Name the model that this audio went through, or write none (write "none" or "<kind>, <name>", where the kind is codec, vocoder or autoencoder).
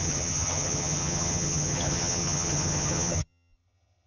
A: vocoder, HiFi-GAN